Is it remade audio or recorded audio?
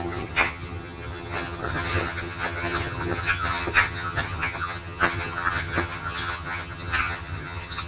remade